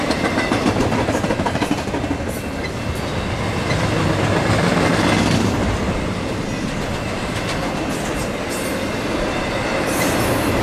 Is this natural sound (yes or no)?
yes